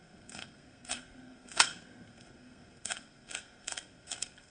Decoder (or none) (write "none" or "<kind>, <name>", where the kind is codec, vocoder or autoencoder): codec, SNAC